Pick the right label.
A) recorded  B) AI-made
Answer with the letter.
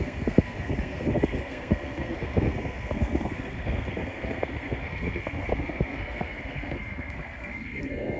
B